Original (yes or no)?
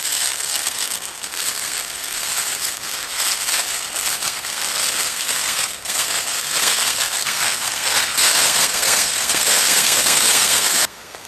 no